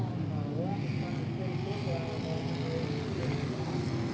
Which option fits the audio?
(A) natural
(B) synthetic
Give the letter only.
A